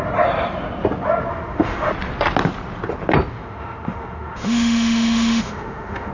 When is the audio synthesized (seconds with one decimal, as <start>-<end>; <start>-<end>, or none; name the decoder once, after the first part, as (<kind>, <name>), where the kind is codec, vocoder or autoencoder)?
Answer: 1.3-1.9 (autoencoder, DAC-VAE); 3.3-6.1